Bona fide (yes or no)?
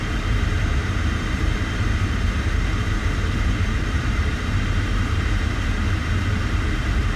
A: no